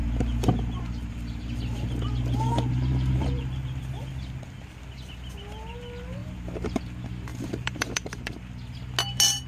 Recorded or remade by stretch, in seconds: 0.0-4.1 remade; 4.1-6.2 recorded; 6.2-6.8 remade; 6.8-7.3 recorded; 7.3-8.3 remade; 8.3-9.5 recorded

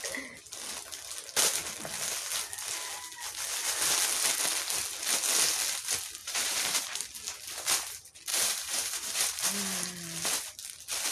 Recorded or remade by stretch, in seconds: 0.0-6.2 recorded; 6.2-6.8 remade; 6.8-8.3 recorded; 8.3-9.4 remade; 9.4-11.1 recorded

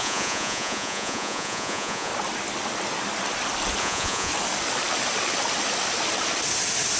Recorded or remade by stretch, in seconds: 0.0-2.1 remade; 2.1-3.8 recorded; 3.8-4.3 remade; 4.3-7.0 recorded